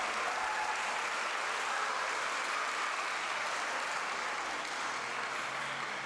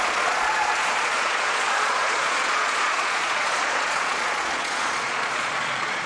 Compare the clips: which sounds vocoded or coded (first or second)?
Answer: second